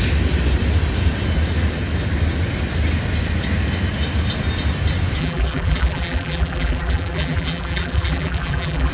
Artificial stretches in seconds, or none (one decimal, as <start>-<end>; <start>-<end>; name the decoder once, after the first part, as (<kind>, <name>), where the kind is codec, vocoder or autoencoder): 5.2-8.9 (vocoder, BigVGAN v2)